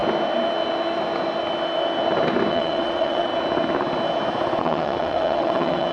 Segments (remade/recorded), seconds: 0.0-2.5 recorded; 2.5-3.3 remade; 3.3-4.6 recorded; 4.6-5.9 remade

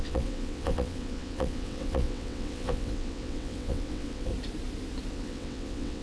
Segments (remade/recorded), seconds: 0.0-4.3 remade; 4.3-5.1 recorded; 5.1-6.0 remade

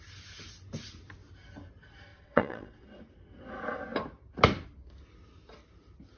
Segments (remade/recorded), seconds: 0.0-2.1 recorded; 2.1-3.0 remade; 3.0-6.2 recorded

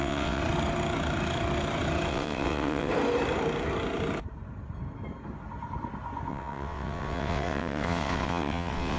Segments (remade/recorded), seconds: 0.0-0.4 remade; 0.4-2.1 recorded; 2.1-2.9 remade; 2.9-6.3 recorded; 6.3-9.0 remade

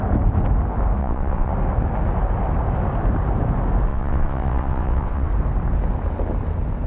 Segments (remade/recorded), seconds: 0.0-1.0 recorded; 1.0-1.5 remade; 1.5-3.9 recorded; 3.9-5.3 remade; 5.3-6.9 recorded